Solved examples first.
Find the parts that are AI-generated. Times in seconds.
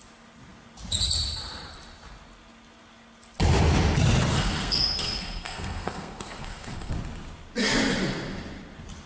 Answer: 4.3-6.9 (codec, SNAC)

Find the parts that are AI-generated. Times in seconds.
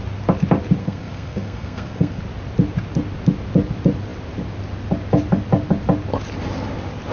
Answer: 0.8-2.2 (codec, SNAC)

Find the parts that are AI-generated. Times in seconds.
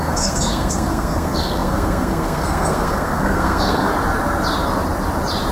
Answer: 0.0-3.9 (codec, SNAC)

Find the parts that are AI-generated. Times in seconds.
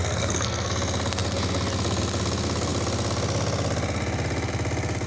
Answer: 0.0-0.7 (codec, SNAC)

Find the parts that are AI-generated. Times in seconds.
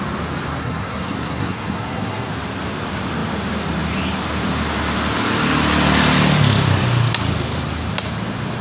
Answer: 0.6-2.3 (codec, SNAC)